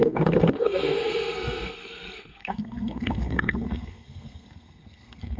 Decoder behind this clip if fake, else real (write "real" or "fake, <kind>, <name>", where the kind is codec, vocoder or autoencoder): fake, codec, SNAC